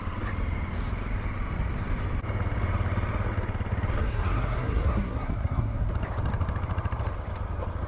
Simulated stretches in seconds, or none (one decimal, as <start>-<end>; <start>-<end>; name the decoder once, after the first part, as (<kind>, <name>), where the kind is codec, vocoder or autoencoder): 4.0-5.9 (codec, SNAC)